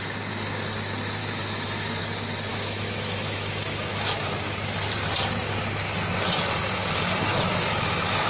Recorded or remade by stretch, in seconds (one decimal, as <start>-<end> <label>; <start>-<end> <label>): 0.0-1.2 recorded; 1.2-2.0 remade; 2.0-2.5 recorded; 2.5-4.3 remade; 4.3-7.3 recorded; 7.3-8.3 remade